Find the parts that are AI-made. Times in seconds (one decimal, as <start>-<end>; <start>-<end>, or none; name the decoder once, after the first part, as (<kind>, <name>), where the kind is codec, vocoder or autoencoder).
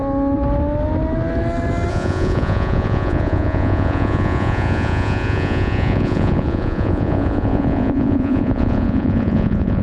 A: 1.9-9.8 (vocoder, Vocos)